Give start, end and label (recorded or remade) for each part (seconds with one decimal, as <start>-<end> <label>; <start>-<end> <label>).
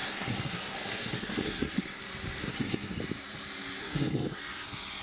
0.0-2.0 remade; 2.0-2.4 recorded; 2.4-3.0 remade; 3.0-3.8 recorded; 3.8-4.4 remade; 4.4-5.0 recorded